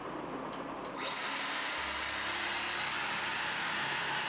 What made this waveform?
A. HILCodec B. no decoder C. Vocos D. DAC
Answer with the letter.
B